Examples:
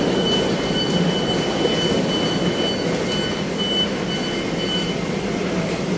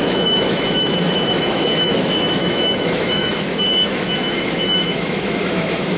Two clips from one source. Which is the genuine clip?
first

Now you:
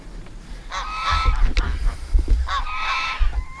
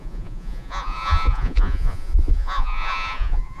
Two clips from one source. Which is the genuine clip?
first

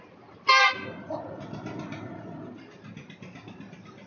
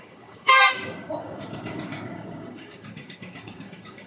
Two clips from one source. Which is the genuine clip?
first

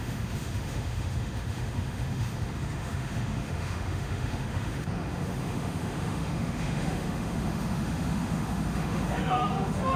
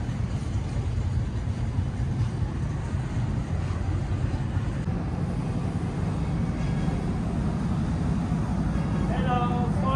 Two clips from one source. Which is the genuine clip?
second